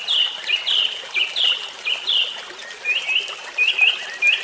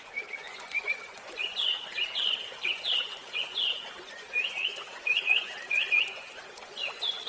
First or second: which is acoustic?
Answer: first